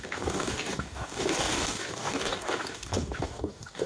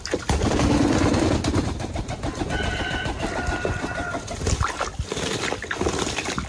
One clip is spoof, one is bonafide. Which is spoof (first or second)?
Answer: first